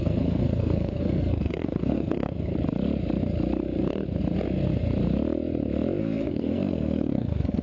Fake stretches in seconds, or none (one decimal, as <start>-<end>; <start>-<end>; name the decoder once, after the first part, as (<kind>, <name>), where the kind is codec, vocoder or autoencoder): 0.0-2.5 (codec, SNAC); 6.0-7.6